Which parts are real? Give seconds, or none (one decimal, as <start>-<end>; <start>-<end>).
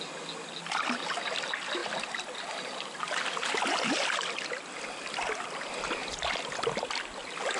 0.0-7.6